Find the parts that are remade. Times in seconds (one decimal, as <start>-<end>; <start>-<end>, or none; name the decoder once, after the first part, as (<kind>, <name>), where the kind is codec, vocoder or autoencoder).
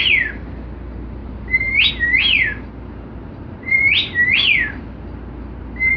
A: 1.2-1.9 (vocoder, BigVGAN v2)